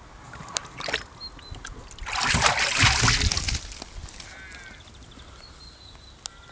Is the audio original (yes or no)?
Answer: yes